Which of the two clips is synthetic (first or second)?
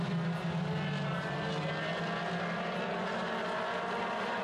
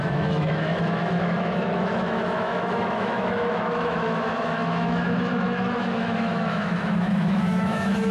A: second